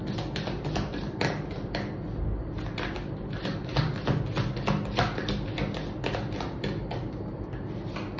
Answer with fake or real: real